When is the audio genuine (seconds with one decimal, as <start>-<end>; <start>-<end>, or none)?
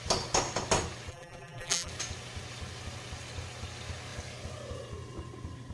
0.0-1.1; 1.9-5.7